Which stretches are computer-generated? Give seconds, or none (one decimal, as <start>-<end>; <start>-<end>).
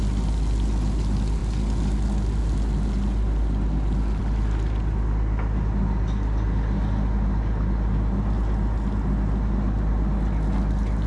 none